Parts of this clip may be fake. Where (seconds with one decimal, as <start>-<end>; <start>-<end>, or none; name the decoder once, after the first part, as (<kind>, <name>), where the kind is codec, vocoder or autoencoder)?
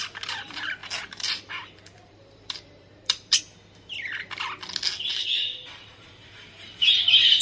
0.8-3.4 (vocoder, BigVGAN v2); 5.1-7.4